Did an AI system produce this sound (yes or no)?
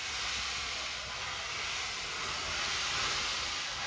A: no